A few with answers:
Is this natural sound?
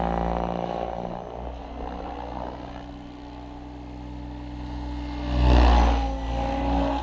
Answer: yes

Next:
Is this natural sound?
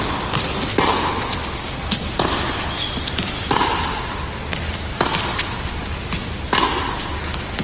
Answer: yes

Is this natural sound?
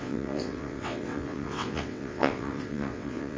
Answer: no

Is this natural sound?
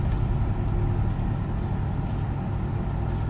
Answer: yes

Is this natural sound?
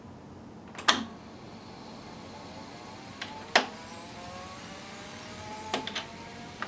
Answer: yes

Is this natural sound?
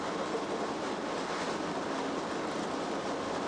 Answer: yes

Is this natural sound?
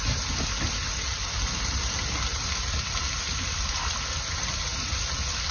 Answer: yes